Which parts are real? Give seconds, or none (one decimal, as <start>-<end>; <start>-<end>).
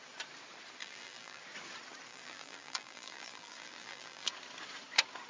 0.0-0.8; 1.4-2.1; 4.3-5.3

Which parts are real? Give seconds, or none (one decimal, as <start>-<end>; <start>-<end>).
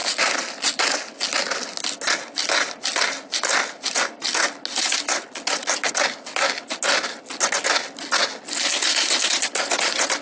0.0-10.2